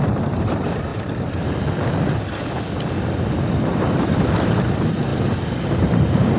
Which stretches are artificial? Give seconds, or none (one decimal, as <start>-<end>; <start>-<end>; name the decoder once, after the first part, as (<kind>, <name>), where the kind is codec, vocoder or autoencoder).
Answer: 0.0-0.9 (vocoder, BigVGAN v2); 3.7-5.1; 5.8-6.4